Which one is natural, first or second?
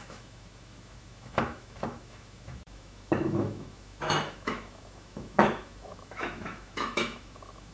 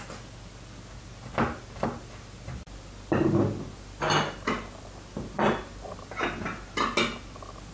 second